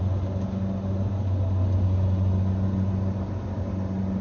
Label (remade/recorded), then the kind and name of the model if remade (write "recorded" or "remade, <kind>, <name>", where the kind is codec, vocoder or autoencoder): recorded